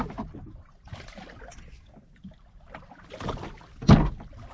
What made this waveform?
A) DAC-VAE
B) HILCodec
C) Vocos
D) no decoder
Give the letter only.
D